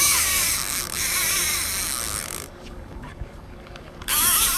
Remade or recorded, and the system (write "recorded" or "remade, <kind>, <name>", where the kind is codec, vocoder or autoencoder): remade, codec, DAC